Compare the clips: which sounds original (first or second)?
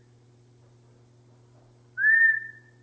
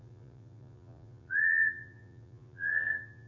first